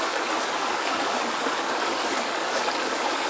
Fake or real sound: fake